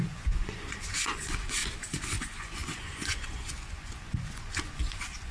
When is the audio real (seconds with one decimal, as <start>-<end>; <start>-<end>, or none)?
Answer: 1.6-2.2

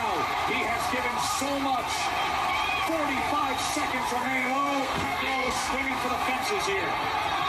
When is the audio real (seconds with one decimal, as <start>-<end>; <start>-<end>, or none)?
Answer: 0.0-4.2; 5.9-7.5

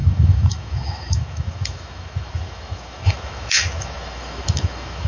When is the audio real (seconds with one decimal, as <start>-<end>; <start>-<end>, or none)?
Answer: none

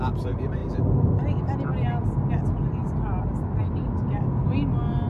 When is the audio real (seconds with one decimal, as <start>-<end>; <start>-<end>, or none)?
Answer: 0.0-5.1

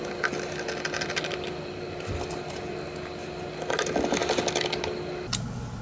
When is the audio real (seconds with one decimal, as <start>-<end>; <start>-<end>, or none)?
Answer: 0.0-5.8